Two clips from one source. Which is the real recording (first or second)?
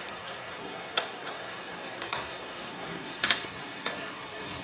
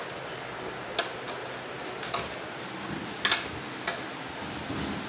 second